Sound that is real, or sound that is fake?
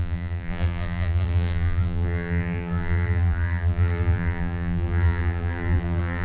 fake